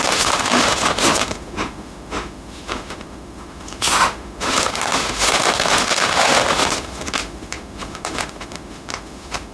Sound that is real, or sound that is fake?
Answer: fake